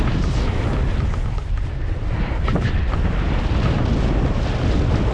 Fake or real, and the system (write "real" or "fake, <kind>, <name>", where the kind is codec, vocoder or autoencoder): real